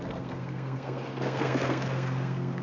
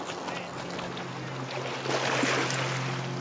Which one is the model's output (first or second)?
first